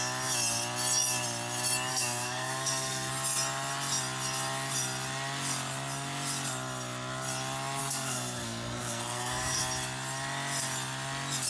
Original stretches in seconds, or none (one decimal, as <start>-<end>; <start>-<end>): 0.0-1.9; 3.1-7.8; 9.6-11.5

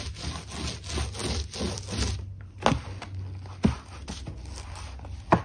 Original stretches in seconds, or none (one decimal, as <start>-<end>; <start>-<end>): 0.0-5.4

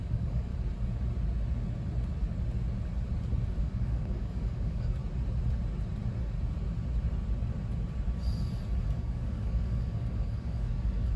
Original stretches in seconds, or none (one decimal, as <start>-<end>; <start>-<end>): 0.5-3.6; 5.0-8.8

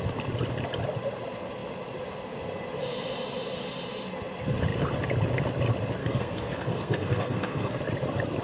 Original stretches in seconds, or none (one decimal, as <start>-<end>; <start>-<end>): 0.0-6.0; 7.8-8.4

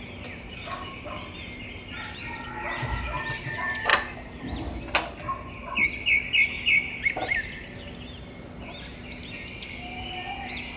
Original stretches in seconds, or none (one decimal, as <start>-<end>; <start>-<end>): 0.0-0.5; 1.2-10.8